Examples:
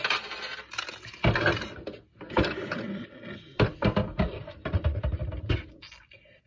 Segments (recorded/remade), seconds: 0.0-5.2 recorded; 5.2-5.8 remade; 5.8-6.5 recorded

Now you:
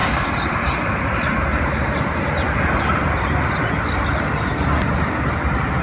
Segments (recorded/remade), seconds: 0.0-5.8 recorded

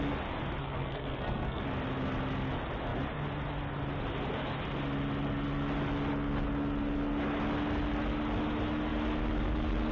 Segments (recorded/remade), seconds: 0.0-0.6 recorded; 0.6-1.6 remade; 1.6-9.9 recorded

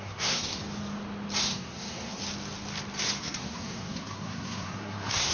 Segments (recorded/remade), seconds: 0.0-0.6 remade; 0.6-1.4 recorded; 1.4-2.2 remade; 2.2-3.2 recorded; 3.2-5.3 remade

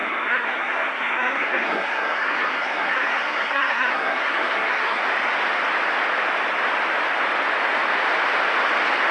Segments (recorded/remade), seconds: 0.0-5.0 remade; 5.0-9.1 recorded